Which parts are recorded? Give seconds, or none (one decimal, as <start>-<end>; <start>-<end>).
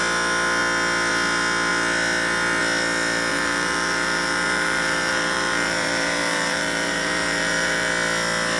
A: 0.0-3.3; 7.9-8.6